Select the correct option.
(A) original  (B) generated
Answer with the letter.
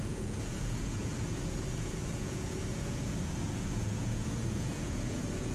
B